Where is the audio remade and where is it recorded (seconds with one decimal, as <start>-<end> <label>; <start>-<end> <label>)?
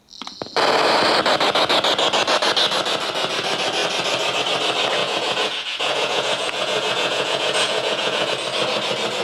0.0-5.0 recorded; 5.0-8.3 remade; 8.3-9.2 recorded